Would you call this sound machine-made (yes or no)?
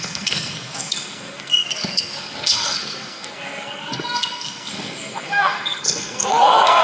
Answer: yes